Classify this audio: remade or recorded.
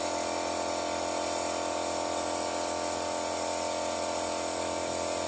recorded